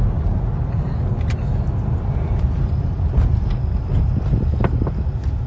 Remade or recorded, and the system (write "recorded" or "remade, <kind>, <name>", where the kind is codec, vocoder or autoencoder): recorded